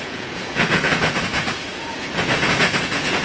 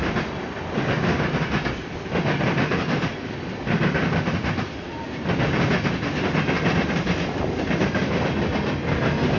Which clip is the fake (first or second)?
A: first